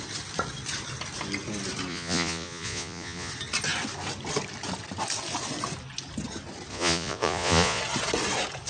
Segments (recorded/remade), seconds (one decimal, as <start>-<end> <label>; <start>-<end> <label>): 0.0-1.9 recorded; 1.9-3.3 remade; 3.3-6.7 recorded; 6.7-7.8 remade; 7.8-8.7 recorded